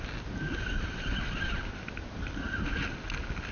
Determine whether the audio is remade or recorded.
recorded